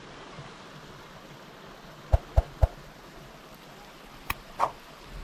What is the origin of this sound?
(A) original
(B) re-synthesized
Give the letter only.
A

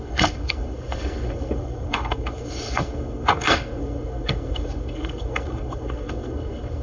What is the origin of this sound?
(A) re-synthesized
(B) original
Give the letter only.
A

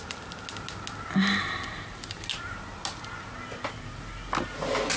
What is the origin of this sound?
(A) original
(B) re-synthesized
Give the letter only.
A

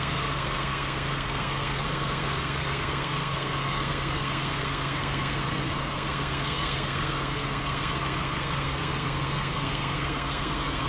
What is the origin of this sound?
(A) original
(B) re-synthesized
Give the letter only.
B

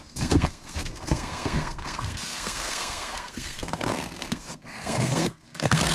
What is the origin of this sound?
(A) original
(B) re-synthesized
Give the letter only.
B